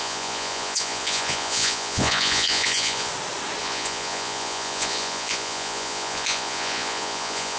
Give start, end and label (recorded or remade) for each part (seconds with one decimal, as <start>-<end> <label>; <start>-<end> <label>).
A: 0.0-3.1 remade; 3.1-3.6 recorded; 3.6-7.6 remade